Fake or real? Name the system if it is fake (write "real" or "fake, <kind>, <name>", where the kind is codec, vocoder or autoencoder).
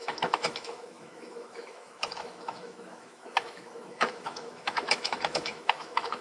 fake, autoencoder, DAC-VAE